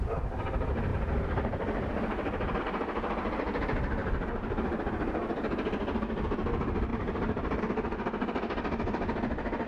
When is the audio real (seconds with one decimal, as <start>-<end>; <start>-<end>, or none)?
0.0-0.9; 2.6-6.9; 7.6-9.7